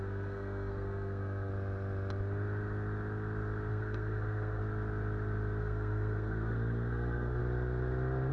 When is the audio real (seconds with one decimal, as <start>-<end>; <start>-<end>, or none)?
1.5-3.7; 4.6-5.6; 7.4-8.3